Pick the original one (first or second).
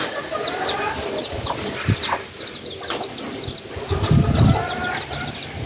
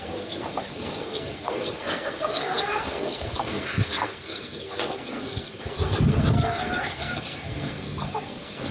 first